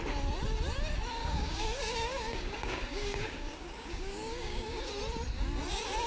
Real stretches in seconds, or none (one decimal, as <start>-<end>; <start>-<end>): 0.0-1.2; 4.9-6.1